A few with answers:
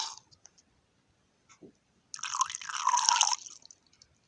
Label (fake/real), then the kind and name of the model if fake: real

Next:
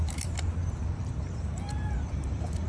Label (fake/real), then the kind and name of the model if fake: fake, vocoder, BigVGAN v2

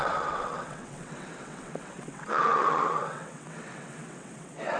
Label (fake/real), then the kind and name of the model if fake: fake, vocoder, WaveNeXt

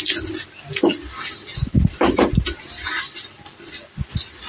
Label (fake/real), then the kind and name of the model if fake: real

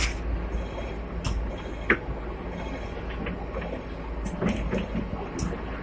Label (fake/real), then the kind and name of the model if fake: real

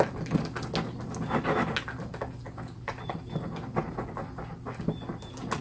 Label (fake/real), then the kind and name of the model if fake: real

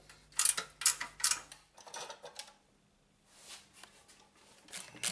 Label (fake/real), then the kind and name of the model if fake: real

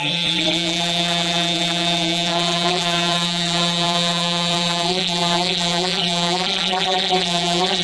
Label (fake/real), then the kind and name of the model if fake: fake, vocoder, BigVGAN v2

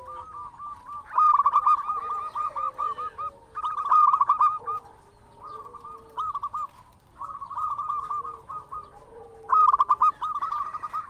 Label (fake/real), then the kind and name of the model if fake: real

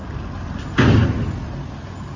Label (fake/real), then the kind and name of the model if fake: real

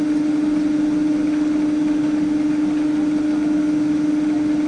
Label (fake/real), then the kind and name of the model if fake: real